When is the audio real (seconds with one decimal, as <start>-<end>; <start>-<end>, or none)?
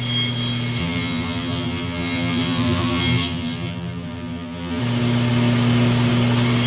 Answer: 0.0-0.8; 4.8-6.7